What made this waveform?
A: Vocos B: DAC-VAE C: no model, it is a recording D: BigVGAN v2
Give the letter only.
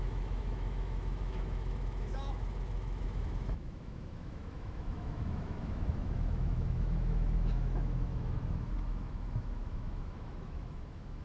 B